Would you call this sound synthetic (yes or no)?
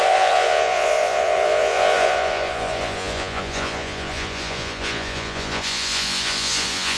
yes